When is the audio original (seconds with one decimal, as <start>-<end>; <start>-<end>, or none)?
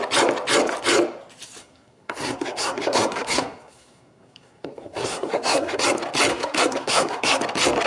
0.0-1.6; 5.8-6.3; 7.4-7.9